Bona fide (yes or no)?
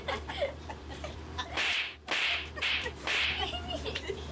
no